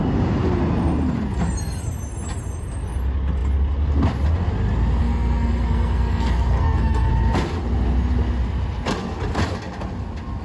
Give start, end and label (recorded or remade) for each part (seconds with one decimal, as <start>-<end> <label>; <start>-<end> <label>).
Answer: 0.0-5.0 recorded; 5.0-7.1 remade; 7.1-10.4 recorded

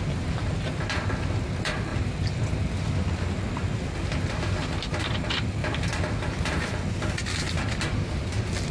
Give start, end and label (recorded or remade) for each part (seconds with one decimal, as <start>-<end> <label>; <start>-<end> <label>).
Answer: 0.0-8.7 recorded

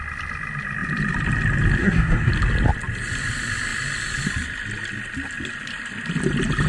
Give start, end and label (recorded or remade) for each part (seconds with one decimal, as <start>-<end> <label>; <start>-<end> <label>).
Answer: 0.0-1.8 recorded; 1.8-2.3 remade; 2.3-6.7 recorded

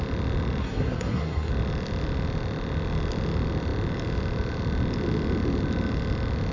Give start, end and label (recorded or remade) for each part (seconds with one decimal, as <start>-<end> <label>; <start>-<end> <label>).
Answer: 0.0-0.6 recorded; 0.6-1.5 remade; 1.5-6.5 recorded